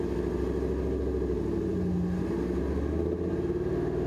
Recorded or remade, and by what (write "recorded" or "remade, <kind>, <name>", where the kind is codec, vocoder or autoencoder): recorded